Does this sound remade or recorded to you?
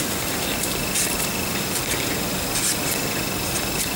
recorded